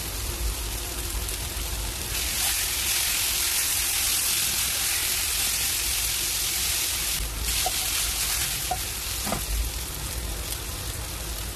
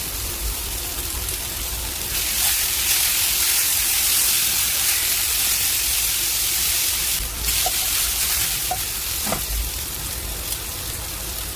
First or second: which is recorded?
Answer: first